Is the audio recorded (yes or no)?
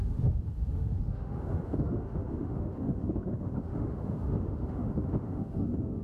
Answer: no